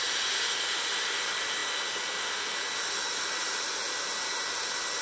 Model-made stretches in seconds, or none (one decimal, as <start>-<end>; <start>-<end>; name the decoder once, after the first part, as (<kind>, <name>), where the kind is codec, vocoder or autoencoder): none